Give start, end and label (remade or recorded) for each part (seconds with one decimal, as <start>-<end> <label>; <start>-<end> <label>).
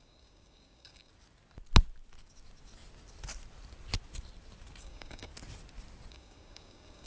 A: 0.0-1.1 remade; 1.1-4.8 recorded; 4.8-5.3 remade; 5.3-6.1 recorded; 6.1-7.1 remade